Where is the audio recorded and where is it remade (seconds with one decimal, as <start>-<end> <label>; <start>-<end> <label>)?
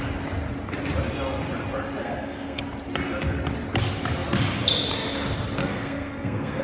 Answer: 0.0-2.0 recorded; 2.0-2.6 remade; 2.6-5.6 recorded; 5.6-6.6 remade